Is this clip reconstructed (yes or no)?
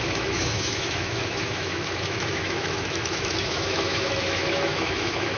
yes